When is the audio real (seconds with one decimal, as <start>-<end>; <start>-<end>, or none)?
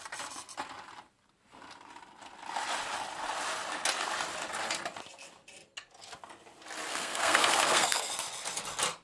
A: 0.0-6.9; 8.1-9.0